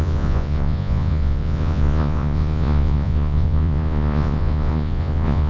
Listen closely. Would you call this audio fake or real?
fake